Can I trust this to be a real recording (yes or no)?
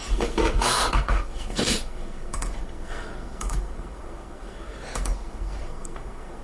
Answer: no